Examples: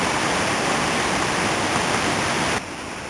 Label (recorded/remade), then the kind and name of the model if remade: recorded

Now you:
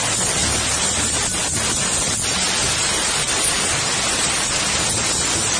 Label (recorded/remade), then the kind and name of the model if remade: recorded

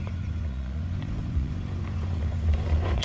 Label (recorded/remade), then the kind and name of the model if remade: remade, vocoder, Vocos